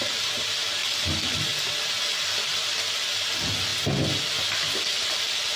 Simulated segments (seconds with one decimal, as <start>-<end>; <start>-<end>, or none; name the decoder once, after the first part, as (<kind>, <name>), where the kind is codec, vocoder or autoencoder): none